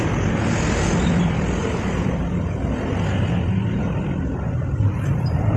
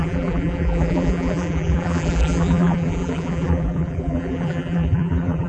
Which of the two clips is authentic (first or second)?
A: first